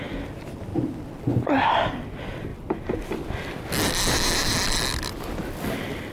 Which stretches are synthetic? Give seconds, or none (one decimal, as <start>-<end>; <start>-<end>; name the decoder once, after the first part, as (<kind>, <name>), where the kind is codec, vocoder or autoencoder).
none